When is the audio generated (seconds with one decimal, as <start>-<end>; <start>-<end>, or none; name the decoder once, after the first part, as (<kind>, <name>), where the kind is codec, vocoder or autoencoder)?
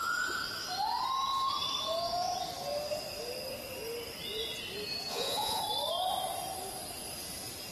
5.1-5.6 (vocoder, Vocos)